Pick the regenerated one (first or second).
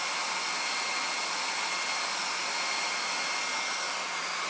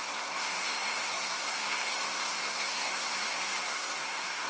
second